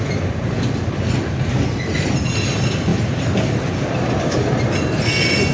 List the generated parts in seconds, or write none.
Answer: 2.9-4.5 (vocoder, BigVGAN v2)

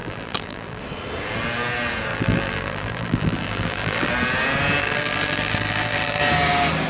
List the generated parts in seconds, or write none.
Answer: 0.0-0.8 (vocoder, BigVGAN v2); 2.1-4.1; 4.8-6.2

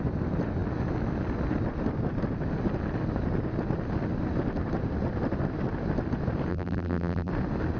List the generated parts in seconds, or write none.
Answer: 6.5-7.3 (vocoder, BigVGAN v2)

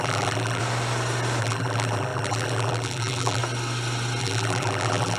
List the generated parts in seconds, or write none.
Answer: 0.0-0.6 (vocoder, BigVGAN v2); 1.4-3.4; 4.2-5.2

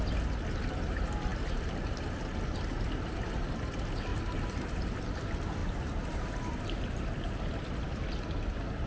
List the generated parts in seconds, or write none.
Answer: 4.1-4.8 (vocoder, BigVGAN v2); 5.6-7.4